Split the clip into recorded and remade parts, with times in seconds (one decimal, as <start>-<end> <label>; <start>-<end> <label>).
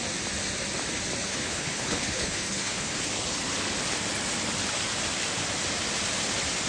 0.0-1.3 recorded; 1.3-3.0 remade; 3.0-6.7 recorded